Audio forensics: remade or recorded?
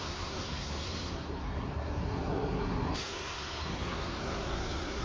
remade